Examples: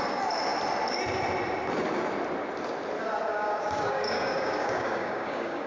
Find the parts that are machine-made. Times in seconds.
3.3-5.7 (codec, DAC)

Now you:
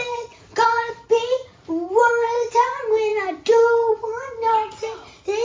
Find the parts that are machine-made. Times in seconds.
none

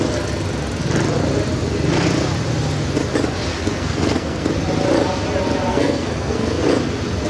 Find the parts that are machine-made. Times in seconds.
3.5-4.5 (codec, SNAC); 5.7-6.6

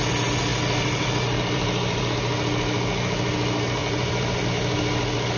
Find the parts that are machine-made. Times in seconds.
0.5-2.1 (vocoder, BigVGAN v2); 3.8-4.5

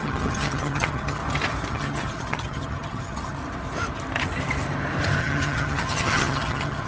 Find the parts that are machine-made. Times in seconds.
0.0-1.2 (vocoder, HiFi-GAN); 1.7-3.4; 5.2-6.9

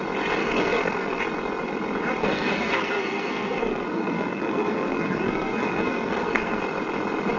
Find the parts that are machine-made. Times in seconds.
0.4-1.2 (codec, SNAC); 2.2-6.6

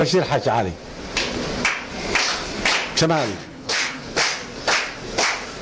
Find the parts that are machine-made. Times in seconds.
3.4-4.1 (codec, HILCodec)